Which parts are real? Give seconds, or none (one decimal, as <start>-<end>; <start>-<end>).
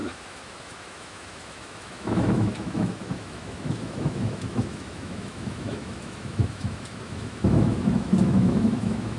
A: none